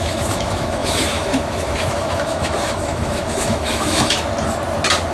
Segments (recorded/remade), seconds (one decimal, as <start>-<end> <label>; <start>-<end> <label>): 0.0-4.3 remade; 4.3-5.1 recorded